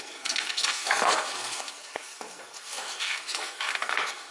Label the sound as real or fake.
fake